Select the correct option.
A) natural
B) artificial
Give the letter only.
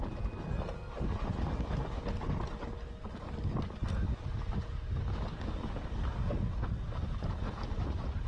A